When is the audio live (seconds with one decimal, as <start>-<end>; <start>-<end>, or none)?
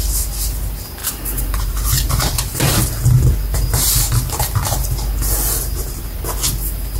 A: 0.0-1.0; 2.9-7.0